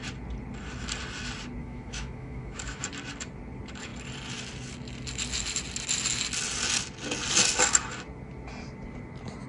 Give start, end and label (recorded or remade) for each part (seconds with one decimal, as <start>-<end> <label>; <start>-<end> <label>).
0.0-1.6 recorded; 1.6-2.8 remade; 2.8-9.5 recorded